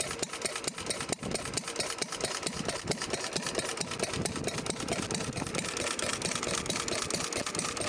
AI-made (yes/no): no